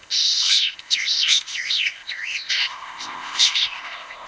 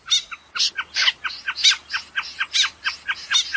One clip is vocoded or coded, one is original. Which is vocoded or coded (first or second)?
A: first